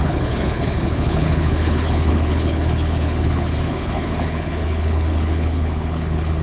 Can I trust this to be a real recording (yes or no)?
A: no